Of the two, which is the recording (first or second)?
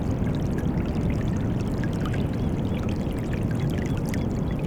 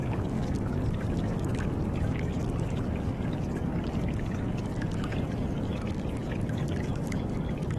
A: first